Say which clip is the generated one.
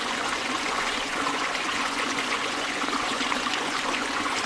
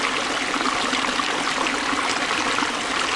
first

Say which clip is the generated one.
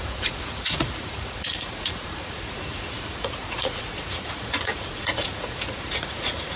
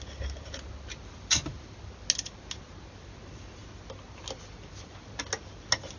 first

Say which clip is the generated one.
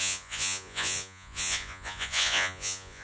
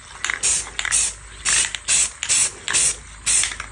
first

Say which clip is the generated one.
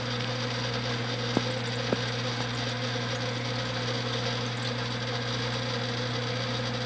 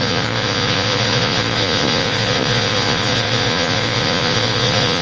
second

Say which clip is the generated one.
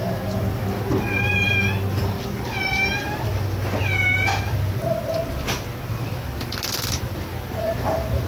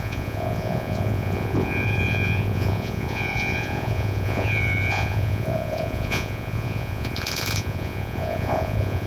second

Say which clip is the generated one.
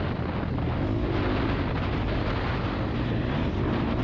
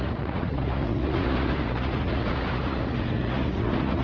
second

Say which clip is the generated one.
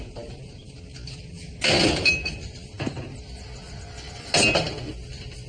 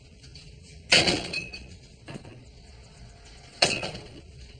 second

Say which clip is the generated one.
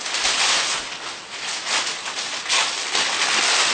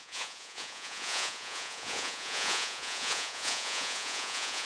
second